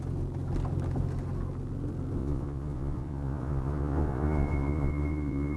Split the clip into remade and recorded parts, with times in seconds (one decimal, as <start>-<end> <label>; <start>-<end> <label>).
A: 0.0-2.2 recorded; 2.2-5.6 remade